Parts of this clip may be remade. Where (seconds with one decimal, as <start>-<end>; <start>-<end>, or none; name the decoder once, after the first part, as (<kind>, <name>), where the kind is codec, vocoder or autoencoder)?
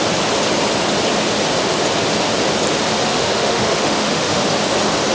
3.1-4.4 (autoencoder, DAC-VAE)